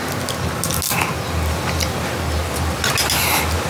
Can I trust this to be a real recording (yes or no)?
yes